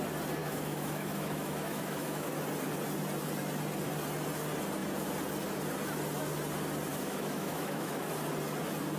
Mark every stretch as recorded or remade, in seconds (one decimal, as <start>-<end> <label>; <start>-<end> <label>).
0.0-0.4 recorded; 0.4-2.3 remade; 2.3-6.9 recorded; 6.9-8.1 remade; 8.1-9.0 recorded